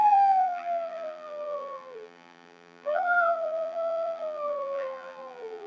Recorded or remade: remade